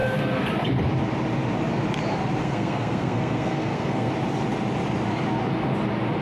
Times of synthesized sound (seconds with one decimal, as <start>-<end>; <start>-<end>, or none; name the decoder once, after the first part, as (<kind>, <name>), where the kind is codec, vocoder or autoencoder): 2.4-4.1 (codec, SNAC)